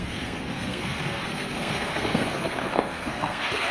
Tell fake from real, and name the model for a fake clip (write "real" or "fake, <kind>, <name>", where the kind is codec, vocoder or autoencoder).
fake, codec, SNAC